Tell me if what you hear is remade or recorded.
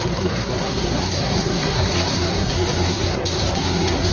remade